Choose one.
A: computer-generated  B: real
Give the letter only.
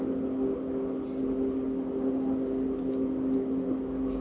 B